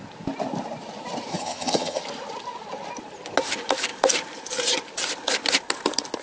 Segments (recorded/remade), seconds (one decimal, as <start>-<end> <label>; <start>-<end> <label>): 0.0-1.3 recorded; 1.3-2.0 remade; 2.0-6.2 recorded